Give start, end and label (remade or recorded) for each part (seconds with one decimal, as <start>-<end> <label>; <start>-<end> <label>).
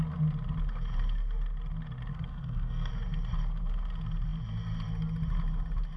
0.0-2.1 recorded; 2.1-2.9 remade; 2.9-6.0 recorded